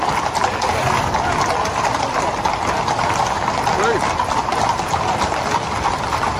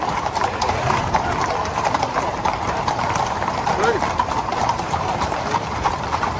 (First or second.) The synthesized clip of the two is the second